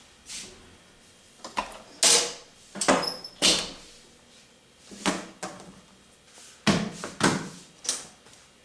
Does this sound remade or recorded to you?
recorded